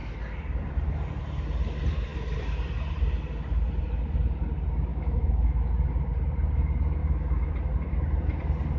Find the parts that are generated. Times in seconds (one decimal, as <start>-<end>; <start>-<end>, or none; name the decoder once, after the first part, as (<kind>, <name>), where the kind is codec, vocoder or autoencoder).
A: 4.9-5.7 (autoencoder, DAC-VAE); 7.0-7.5

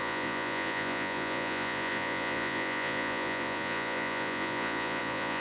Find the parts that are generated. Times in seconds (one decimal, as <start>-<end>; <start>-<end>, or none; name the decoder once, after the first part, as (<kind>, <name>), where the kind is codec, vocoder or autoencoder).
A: 0.0-5.4 (vocoder, Vocos)

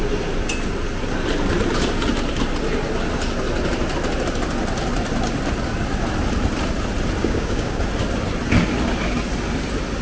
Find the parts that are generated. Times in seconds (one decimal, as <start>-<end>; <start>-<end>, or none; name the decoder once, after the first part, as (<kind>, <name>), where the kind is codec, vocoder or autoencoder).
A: 7.2-7.8 (codec, DAC)

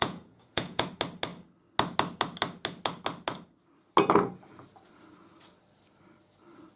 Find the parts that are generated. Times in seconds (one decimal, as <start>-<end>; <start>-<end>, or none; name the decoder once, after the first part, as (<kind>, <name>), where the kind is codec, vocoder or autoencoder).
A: 0.0-0.9 (vocoder, Vocos)

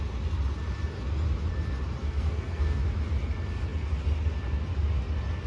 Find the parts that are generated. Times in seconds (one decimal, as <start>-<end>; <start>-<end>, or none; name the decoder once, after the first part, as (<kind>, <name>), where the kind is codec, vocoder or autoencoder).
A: 2.0-2.8 (codec, SNAC)

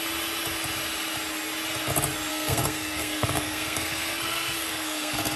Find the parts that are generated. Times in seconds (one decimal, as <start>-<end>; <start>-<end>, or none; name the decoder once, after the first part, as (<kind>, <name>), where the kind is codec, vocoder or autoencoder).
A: 2.3-5.4 (codec, SNAC)